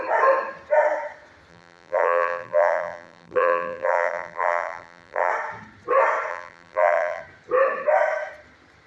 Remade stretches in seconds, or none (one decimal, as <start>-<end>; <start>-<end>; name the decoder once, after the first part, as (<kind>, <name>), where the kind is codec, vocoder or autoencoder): 1.5-5.3 (vocoder, BigVGAN v2); 6.3-7.2

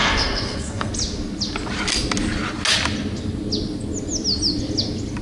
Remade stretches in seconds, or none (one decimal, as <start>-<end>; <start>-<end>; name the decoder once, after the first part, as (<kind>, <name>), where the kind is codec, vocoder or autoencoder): 0.0-0.9 (codec, SNAC)

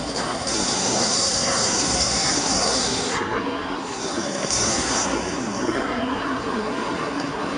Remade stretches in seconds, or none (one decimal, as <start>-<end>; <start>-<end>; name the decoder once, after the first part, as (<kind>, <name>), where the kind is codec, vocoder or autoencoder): 0.0-7.6 (codec, SNAC)